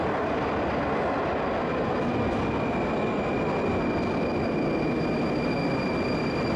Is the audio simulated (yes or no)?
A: no